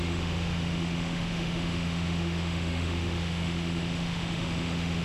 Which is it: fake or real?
fake